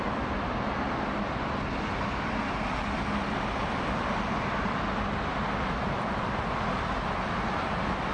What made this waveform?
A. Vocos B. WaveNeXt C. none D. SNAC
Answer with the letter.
C